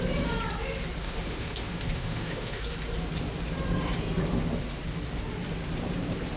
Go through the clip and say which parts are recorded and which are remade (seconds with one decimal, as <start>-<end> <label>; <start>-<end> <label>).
0.0-1.0 recorded; 1.0-2.6 remade; 2.6-6.4 recorded